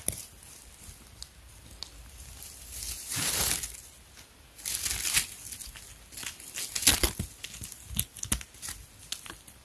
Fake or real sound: real